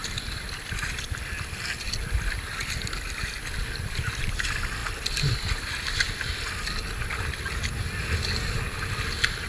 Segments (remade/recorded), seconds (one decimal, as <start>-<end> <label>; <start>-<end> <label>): 0.0-9.5 recorded